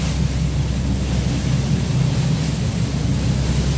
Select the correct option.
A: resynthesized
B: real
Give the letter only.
B